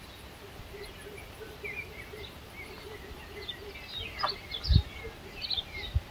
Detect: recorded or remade recorded